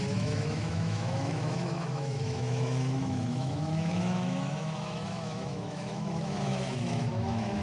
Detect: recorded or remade remade